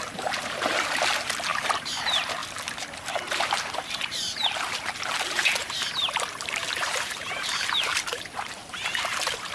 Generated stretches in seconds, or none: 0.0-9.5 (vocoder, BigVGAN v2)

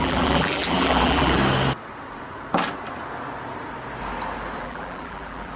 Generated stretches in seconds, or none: 0.0-1.4 (vocoder, BigVGAN v2); 4.6-5.6